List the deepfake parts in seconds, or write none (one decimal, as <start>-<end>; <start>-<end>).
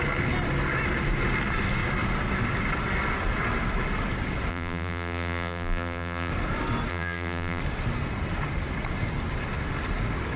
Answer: 4.5-6.3; 6.9-7.6